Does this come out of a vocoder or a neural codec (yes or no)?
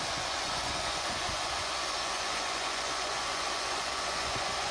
yes